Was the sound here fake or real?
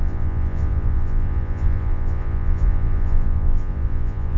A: fake